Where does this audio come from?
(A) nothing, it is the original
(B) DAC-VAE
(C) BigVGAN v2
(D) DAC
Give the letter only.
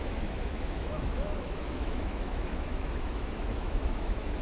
B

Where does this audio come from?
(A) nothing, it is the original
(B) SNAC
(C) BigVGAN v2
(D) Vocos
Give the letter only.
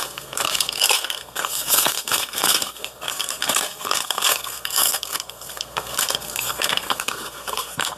B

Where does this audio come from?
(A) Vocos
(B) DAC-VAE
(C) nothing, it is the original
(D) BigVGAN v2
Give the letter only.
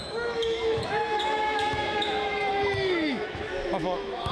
B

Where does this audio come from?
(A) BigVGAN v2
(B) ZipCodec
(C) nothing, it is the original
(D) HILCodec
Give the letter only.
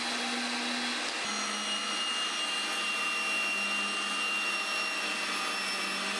C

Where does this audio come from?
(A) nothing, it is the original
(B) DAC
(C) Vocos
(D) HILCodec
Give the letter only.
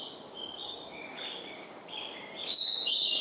B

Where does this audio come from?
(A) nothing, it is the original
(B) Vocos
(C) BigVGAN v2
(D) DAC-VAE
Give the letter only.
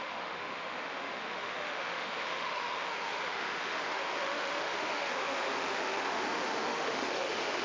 D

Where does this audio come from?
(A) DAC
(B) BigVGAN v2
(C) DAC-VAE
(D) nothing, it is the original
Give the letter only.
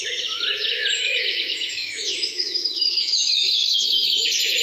C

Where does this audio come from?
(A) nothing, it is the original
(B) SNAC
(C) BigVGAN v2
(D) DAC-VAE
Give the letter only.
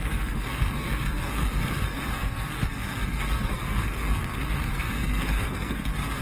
B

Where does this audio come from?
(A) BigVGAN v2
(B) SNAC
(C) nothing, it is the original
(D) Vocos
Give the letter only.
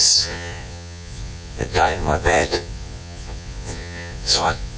D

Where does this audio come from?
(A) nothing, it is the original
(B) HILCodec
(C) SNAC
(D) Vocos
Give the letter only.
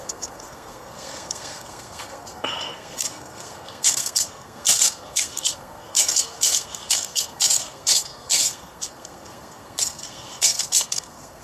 C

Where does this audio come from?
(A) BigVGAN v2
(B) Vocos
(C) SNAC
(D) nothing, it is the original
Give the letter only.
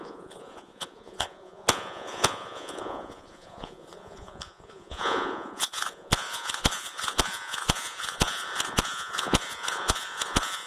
B